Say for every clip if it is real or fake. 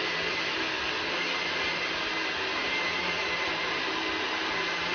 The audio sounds real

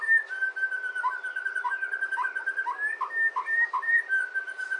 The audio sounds real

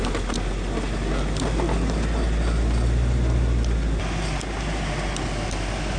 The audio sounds real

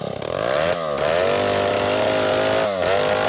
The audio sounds real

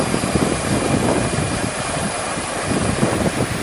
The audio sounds fake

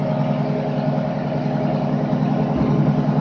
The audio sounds real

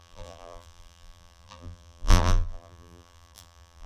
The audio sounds fake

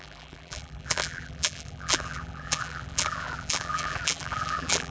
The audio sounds fake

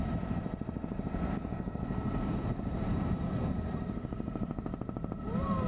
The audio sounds fake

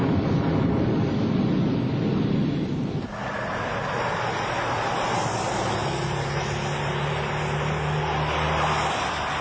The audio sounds real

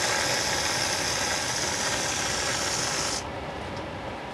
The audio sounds real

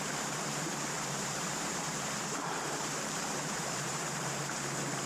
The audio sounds fake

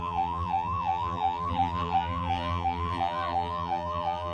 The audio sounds fake